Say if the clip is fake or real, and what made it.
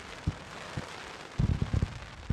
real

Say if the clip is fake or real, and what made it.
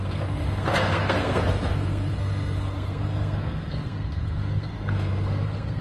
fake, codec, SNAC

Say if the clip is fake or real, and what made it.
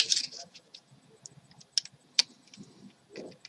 real